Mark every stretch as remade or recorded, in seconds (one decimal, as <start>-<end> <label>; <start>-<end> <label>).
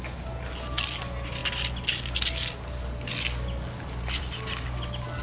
0.0-5.2 recorded